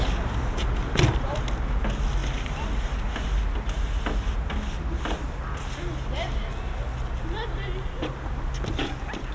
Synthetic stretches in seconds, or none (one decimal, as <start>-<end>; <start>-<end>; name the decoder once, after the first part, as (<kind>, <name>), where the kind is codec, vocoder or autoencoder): none